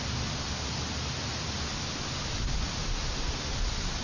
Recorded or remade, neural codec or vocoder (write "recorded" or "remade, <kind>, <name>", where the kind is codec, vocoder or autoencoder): recorded